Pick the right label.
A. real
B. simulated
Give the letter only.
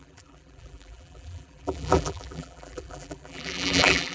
B